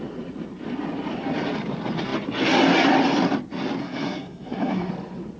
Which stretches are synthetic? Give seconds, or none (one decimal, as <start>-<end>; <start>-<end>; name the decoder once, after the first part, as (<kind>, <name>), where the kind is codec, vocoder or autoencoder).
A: 3.8-4.9 (codec, SNAC)